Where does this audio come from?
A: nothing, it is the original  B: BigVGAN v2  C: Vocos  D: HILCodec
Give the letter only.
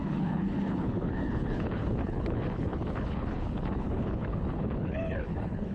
D